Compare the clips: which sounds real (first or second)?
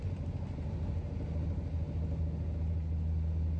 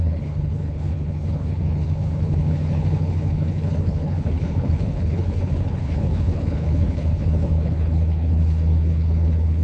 first